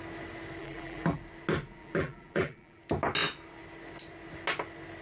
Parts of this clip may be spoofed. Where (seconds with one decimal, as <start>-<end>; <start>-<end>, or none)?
0.6-1.2; 1.8-2.8